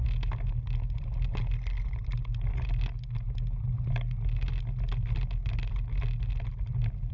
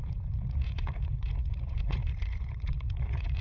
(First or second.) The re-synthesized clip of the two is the second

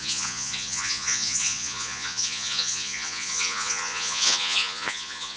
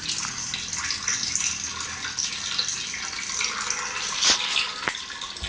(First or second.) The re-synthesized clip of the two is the first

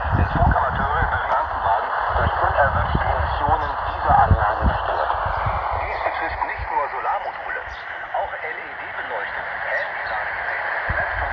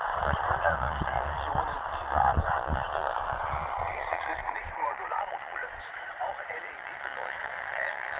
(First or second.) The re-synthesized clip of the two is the second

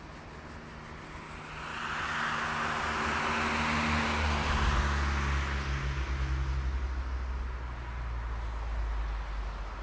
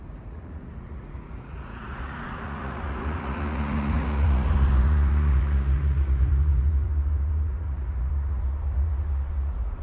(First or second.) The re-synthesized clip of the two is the second